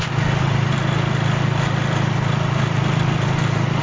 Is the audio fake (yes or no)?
no